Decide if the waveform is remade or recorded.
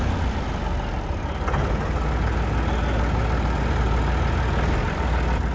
recorded